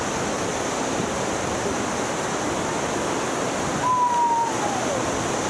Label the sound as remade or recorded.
recorded